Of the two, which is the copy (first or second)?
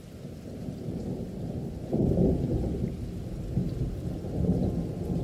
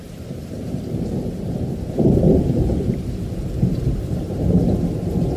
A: second